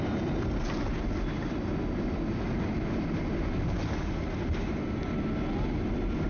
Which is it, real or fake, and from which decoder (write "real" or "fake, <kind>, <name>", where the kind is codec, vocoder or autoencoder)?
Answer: real